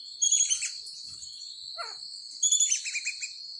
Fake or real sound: real